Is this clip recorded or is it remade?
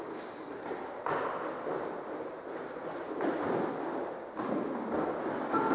recorded